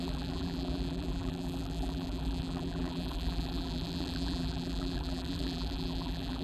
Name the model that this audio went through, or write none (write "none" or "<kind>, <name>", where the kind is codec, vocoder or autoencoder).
vocoder, BigVGAN v2